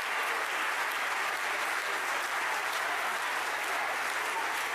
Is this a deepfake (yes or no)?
no